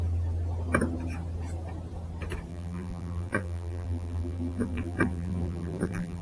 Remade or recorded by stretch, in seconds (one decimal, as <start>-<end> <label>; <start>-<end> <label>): 0.0-2.5 recorded; 2.5-6.2 remade